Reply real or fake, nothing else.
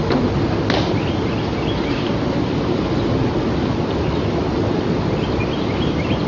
real